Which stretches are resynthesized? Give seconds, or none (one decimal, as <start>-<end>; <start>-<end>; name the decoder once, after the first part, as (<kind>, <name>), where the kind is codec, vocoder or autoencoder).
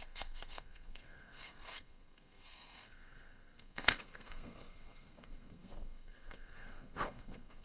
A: 0.0-7.6 (codec, SNAC)